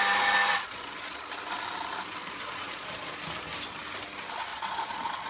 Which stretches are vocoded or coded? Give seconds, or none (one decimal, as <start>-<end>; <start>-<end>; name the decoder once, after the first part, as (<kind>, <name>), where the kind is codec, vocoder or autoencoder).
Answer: 0.5-1.2 (vocoder, Vocos); 2.2-3.1; 4.5-5.3